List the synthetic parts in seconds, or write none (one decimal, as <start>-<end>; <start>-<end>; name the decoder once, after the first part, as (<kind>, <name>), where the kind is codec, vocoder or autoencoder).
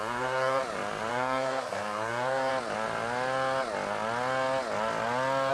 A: 0.0-0.6 (codec, SNAC); 1.1-2.5